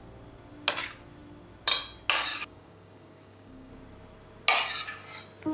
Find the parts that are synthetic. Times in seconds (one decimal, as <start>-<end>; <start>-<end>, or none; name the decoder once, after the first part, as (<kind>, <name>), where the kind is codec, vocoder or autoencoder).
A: 2.3-3.7 (codec, DAC)